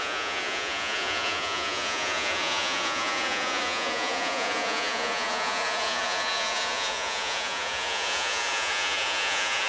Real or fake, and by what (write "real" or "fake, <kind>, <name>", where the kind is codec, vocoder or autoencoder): fake, vocoder, Vocos